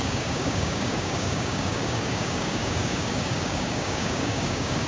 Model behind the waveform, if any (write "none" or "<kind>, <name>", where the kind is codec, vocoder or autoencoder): codec, DAC